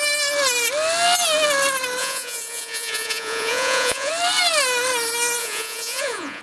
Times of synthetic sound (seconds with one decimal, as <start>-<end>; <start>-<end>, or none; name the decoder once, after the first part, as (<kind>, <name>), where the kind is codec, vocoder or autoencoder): 2.0-4.1 (vocoder, Vocos); 5.4-6.4